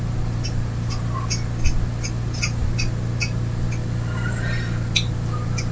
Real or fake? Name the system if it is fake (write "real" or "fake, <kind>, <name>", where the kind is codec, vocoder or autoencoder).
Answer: real